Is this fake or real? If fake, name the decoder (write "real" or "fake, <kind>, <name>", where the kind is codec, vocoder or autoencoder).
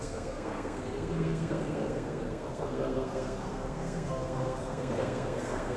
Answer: fake, codec, SNAC